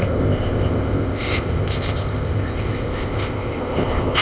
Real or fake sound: fake